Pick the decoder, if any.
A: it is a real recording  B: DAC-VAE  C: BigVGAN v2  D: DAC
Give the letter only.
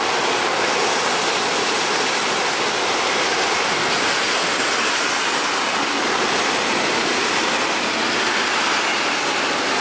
A